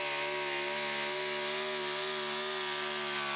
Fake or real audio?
real